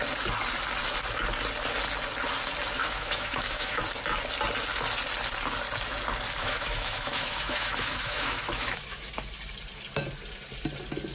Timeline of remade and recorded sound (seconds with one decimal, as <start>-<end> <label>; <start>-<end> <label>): 0.0-2.8 recorded; 2.8-3.8 remade; 3.8-6.4 recorded; 6.4-9.1 remade; 9.1-11.1 recorded